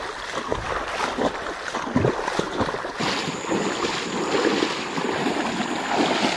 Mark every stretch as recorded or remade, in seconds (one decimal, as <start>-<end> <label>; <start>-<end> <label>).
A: 0.0-6.4 recorded

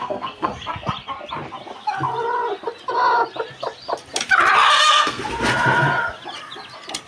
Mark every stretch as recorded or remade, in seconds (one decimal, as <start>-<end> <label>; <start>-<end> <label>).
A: 0.0-0.5 remade; 0.5-4.7 recorded; 4.7-5.2 remade; 5.2-7.1 recorded

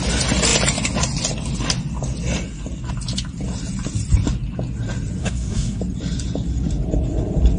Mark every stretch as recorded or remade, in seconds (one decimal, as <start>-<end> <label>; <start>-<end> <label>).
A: 0.0-5.2 recorded; 5.2-5.8 remade; 5.8-7.6 recorded

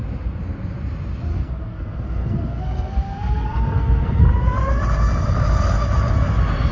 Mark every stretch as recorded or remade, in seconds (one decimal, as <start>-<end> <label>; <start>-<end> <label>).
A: 0.0-1.3 recorded; 1.3-4.2 remade; 4.2-6.7 recorded

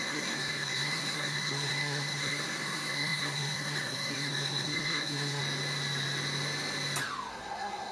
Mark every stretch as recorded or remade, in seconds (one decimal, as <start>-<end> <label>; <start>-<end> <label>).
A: 0.0-5.4 remade; 5.4-7.3 recorded; 7.3-7.9 remade